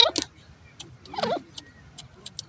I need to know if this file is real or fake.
real